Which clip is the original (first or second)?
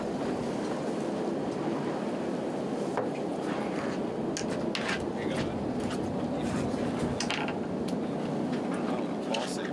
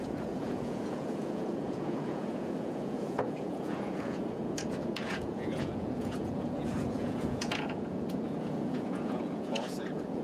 first